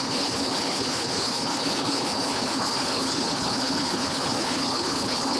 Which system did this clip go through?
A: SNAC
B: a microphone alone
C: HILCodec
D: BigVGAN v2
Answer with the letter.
C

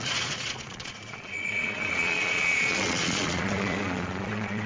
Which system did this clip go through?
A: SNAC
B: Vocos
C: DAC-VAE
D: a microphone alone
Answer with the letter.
B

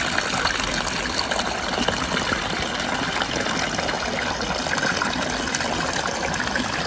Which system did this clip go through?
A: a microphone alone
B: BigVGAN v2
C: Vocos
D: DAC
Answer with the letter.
A